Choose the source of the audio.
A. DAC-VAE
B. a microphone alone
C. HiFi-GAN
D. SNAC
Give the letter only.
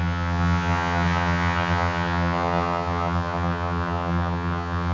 C